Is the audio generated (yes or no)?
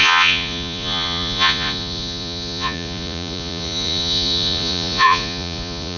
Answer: yes